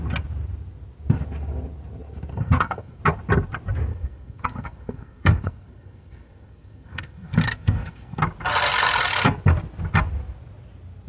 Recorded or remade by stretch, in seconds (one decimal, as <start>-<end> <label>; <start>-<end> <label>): 0.0-2.3 recorded; 2.3-3.0 remade; 3.0-3.9 recorded; 3.9-8.2 remade; 8.2-11.1 recorded